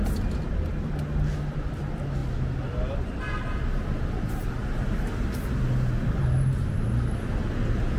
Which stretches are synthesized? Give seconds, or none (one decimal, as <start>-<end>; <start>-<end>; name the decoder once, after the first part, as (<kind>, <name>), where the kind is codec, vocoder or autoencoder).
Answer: none